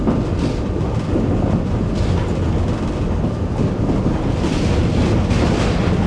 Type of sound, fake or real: real